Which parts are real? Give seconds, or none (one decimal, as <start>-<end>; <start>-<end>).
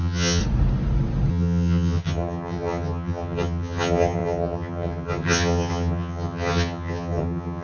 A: 0.4-1.3